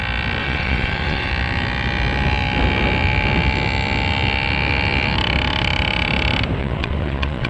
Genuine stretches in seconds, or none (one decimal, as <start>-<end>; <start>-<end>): 0.0-0.4; 1.3-6.6